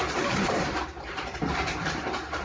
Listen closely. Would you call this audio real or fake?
fake